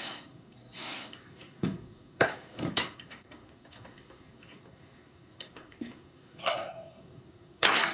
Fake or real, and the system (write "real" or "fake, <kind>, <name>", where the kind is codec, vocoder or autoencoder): fake, codec, SNAC